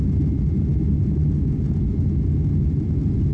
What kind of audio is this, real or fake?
real